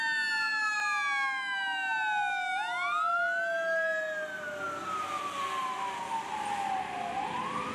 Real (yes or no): yes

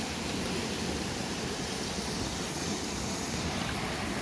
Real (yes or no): yes